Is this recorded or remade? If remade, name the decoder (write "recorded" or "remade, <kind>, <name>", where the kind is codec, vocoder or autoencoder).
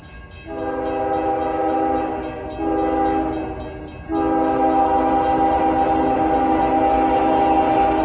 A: recorded